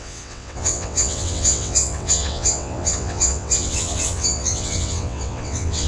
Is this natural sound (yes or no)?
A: no